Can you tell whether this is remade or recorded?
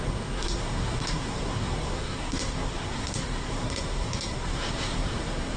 remade